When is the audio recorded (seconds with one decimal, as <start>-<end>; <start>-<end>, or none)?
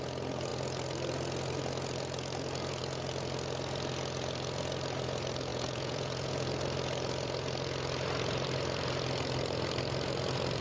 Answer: 0.0-5.5; 6.3-10.6